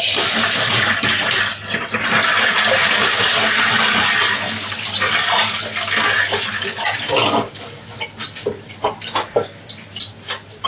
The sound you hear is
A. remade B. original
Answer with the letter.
B